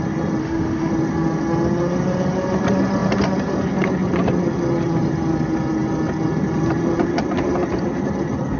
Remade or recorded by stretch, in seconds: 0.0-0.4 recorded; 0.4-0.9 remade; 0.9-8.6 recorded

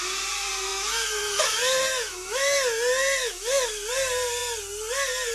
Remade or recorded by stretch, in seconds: 0.0-0.7 recorded; 0.7-3.9 remade; 3.9-5.3 recorded

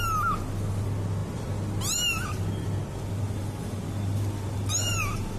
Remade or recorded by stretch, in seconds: 0.0-5.4 recorded

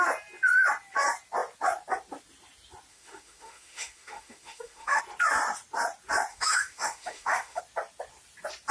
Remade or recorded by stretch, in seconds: 0.0-2.9 recorded; 2.9-5.0 remade; 5.0-6.3 recorded; 6.3-7.6 remade; 7.6-8.7 recorded

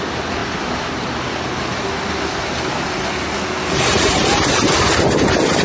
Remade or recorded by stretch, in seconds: 0.0-5.6 recorded

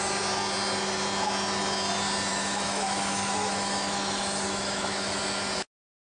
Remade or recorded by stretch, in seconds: 0.0-2.3 recorded; 2.3-5.2 remade; 5.2-6.2 recorded

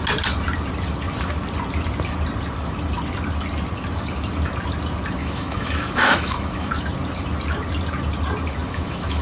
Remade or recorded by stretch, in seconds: 0.0-5.2 recorded; 5.2-6.7 remade; 6.7-8.6 recorded; 8.6-9.2 remade